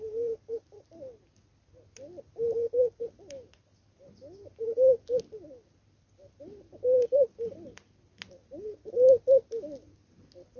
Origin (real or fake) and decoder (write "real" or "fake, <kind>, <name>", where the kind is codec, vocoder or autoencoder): real